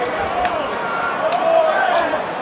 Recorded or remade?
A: recorded